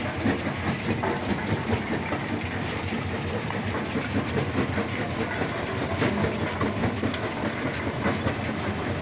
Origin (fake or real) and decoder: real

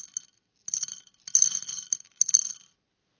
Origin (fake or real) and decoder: real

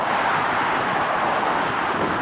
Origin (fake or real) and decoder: real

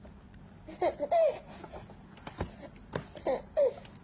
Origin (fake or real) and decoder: real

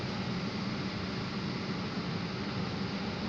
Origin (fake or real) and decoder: real